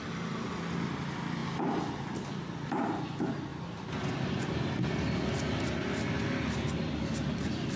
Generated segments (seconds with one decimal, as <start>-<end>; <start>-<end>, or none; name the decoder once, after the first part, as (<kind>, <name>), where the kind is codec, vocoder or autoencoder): none